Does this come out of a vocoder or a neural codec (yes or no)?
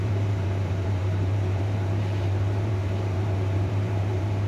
yes